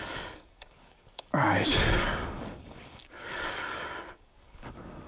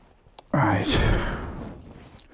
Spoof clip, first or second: first